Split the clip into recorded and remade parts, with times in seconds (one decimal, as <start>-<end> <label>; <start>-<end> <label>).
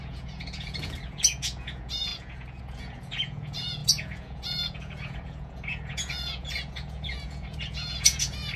0.0-8.6 remade